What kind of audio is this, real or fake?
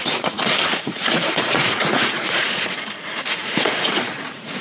fake